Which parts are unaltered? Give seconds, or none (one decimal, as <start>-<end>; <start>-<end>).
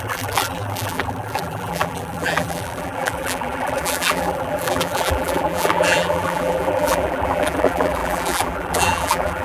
none